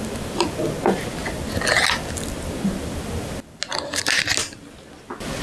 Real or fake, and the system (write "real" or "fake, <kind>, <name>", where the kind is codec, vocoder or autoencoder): real